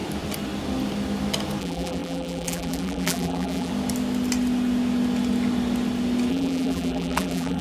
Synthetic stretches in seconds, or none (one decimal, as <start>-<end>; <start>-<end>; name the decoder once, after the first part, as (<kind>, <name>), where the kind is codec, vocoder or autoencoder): 1.6-3.7 (vocoder, BigVGAN v2); 6.3-7.6